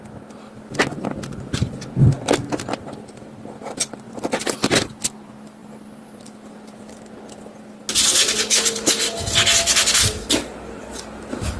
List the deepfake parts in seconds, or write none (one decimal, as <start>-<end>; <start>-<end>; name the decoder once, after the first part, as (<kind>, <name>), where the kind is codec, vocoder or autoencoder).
none